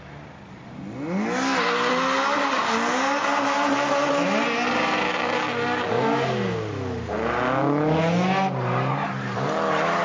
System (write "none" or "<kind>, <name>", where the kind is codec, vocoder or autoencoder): none